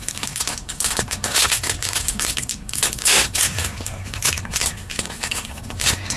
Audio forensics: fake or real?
fake